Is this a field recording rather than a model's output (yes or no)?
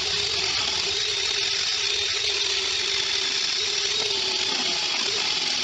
yes